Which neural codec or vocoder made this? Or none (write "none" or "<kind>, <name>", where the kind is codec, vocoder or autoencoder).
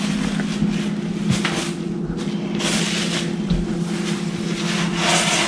none